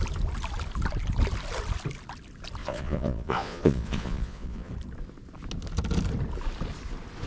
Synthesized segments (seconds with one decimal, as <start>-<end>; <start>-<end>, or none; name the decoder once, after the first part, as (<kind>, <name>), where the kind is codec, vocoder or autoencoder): 2.6-4.7 (vocoder, Vocos)